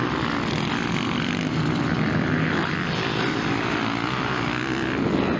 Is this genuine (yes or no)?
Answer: yes